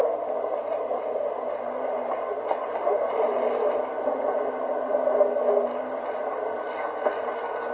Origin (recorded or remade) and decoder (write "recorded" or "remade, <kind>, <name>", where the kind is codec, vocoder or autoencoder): recorded